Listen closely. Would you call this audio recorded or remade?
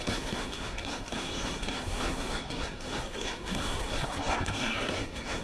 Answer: remade